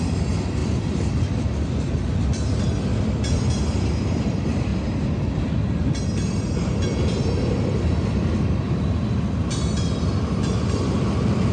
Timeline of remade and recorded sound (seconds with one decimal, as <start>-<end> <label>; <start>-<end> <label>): 0.0-11.5 recorded